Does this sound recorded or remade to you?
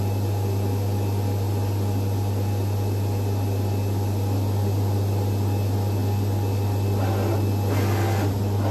recorded